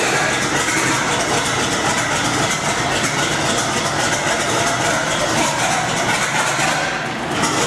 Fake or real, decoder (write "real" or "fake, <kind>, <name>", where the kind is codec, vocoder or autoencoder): real